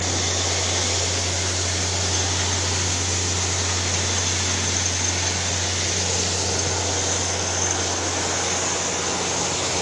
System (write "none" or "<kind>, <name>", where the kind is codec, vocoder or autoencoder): none